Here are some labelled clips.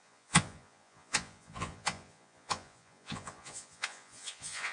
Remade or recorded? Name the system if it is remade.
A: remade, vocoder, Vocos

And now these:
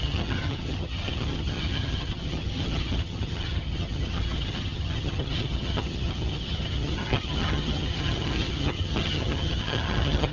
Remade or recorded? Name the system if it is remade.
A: remade, vocoder, HiFi-GAN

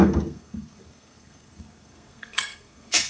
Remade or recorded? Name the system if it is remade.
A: remade, codec, SNAC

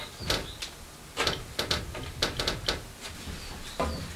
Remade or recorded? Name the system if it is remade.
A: recorded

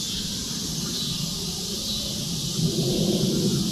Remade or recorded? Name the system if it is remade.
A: remade, vocoder, BigVGAN v2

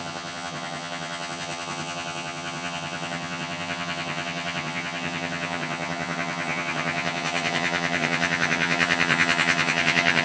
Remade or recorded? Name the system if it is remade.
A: remade, vocoder, HiFi-GAN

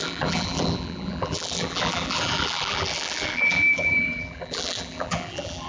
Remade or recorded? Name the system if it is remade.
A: remade, vocoder, BigVGAN v2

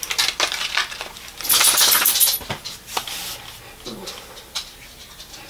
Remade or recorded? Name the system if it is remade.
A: recorded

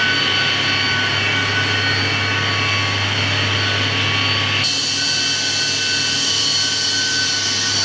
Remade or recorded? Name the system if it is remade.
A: recorded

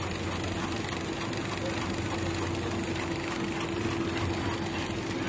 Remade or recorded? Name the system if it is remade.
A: recorded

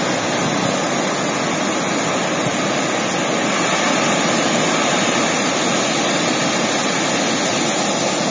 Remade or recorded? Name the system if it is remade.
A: recorded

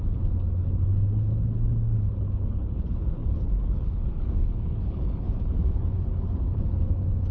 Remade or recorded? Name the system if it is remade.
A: remade, codec, HILCodec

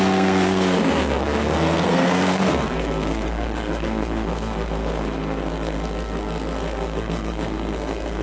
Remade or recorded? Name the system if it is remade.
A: remade, codec, SNAC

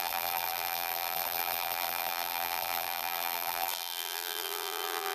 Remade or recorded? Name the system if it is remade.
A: remade, vocoder, BigVGAN v2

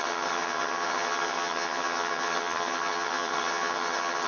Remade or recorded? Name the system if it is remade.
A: remade, vocoder, HiFi-GAN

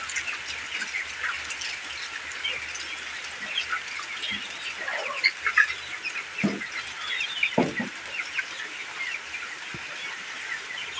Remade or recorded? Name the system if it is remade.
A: recorded